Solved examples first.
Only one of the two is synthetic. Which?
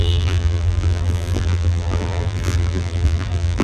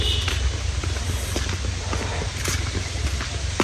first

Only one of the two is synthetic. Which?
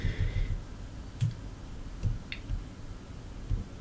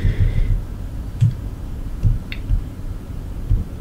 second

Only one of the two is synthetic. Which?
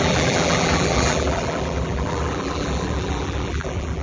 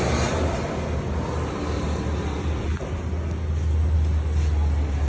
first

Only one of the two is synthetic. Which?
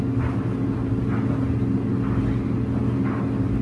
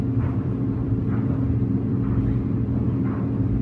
second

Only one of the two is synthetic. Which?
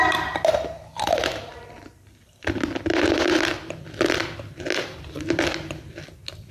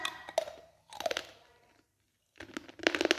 first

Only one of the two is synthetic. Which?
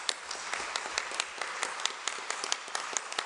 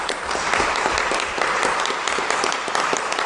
second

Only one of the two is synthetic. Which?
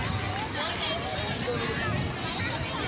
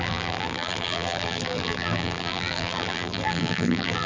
second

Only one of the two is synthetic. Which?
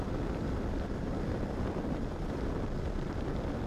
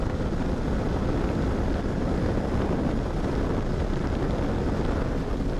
first